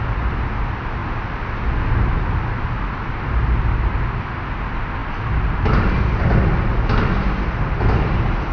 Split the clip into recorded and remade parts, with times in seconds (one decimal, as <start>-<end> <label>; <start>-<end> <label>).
0.0-8.5 recorded